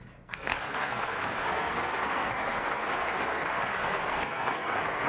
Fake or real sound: fake